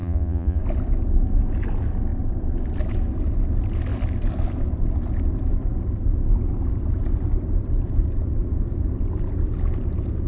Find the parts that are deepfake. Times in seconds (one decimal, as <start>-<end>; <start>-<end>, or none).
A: 0.0-0.6